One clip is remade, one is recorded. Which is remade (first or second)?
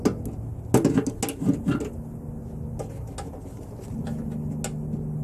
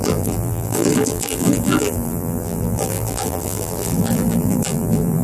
second